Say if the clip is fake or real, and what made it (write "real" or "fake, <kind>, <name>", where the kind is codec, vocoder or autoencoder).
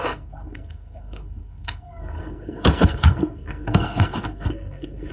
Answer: fake, codec, SNAC